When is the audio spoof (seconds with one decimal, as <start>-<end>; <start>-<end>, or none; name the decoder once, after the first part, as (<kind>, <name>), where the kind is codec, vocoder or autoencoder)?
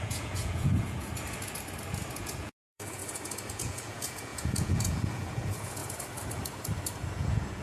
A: 0.0-1.1 (vocoder, Vocos); 2.1-3.0; 3.5-5.8; 7.1-7.6